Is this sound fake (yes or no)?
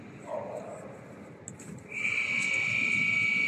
no